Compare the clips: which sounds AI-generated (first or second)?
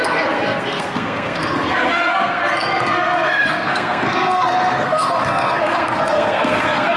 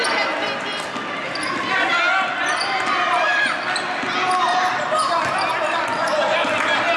first